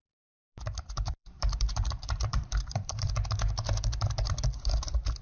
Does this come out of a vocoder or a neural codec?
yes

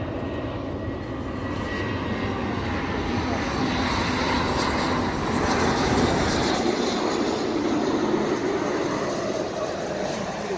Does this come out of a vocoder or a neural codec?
no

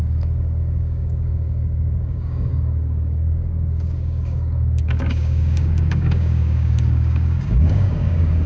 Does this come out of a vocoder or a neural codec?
yes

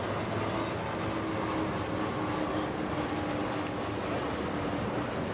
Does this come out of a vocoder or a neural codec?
no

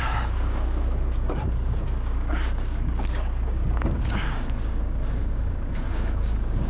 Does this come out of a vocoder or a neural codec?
yes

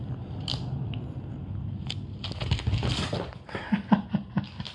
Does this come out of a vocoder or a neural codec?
no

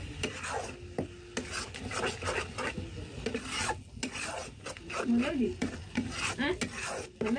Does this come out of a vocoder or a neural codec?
no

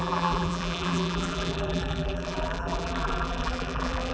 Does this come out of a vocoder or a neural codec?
yes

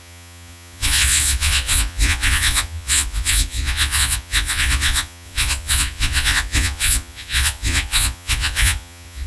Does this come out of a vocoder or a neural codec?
yes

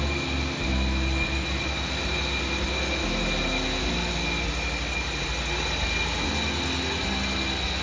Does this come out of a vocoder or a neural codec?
no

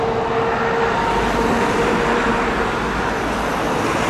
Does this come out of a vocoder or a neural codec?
no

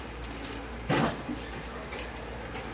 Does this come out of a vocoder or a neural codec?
no